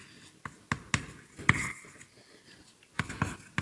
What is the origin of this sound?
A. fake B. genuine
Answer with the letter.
B